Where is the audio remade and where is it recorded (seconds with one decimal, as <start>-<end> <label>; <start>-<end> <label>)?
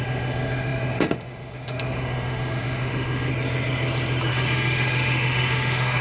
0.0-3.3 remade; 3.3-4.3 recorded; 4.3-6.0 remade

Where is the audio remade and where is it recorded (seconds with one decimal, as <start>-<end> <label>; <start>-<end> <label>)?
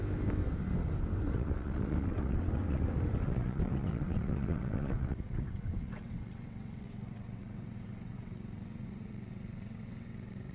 0.0-1.2 recorded; 1.2-10.5 remade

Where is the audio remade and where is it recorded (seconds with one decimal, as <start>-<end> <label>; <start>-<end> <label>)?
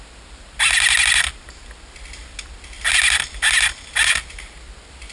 0.0-5.1 recorded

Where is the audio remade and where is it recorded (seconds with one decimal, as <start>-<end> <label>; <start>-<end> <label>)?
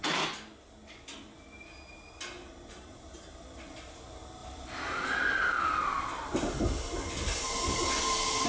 0.0-8.5 recorded